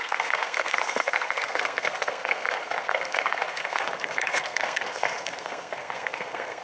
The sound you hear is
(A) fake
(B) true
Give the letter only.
A